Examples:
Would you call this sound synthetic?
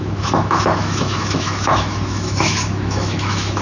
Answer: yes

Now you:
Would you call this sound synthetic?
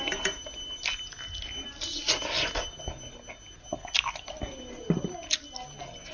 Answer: no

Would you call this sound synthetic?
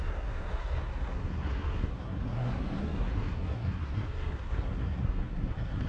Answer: yes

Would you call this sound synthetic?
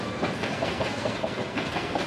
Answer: yes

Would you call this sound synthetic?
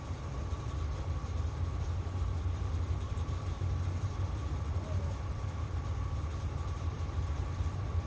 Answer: yes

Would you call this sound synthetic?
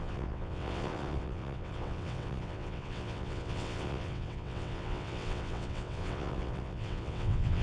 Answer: yes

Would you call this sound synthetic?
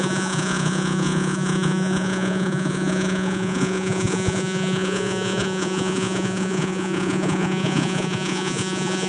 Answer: yes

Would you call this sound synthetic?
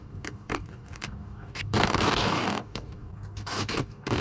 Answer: yes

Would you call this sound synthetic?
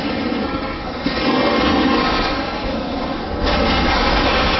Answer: yes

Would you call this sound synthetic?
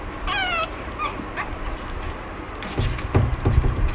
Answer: no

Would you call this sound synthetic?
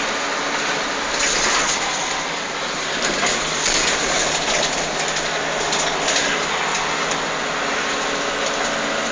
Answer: no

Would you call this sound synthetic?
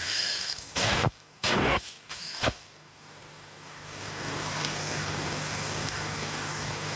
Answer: yes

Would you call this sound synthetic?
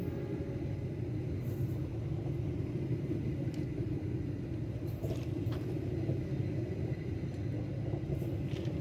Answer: no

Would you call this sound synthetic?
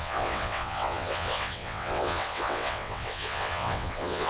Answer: yes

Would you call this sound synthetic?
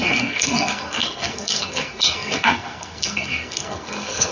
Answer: yes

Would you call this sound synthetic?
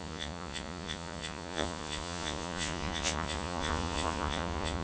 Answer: yes